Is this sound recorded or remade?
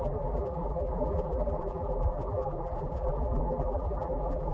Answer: remade